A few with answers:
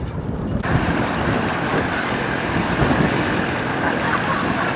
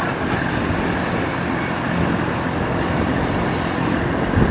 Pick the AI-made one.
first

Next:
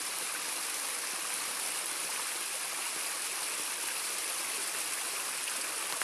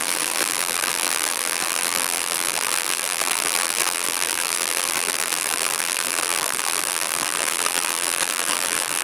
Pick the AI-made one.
second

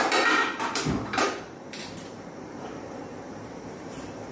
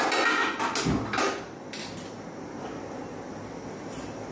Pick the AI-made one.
first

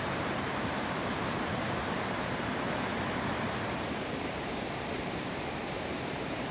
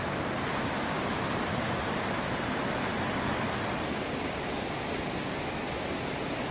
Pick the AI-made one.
first